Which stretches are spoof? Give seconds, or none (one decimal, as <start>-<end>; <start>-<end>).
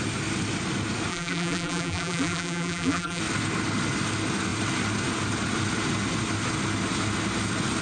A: 1.1-3.2